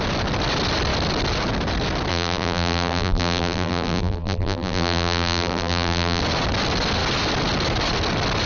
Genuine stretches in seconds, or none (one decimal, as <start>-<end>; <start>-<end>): 0.0-2.1; 6.2-8.5

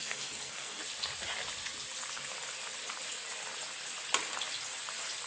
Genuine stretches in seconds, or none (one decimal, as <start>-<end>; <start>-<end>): 0.8-5.3

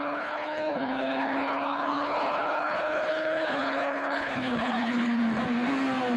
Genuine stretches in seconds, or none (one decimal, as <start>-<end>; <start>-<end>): 5.2-6.2

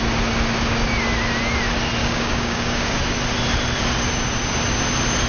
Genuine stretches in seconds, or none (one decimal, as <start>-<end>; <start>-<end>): 0.0-2.0; 3.0-5.3